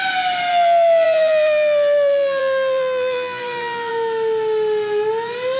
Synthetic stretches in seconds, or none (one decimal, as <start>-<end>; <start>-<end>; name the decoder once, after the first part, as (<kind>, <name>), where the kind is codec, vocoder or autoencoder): 0.5-3.9 (vocoder, BigVGAN v2)